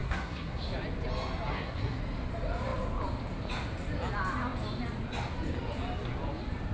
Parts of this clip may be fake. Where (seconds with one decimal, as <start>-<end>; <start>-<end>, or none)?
0.0-0.7; 1.5-2.0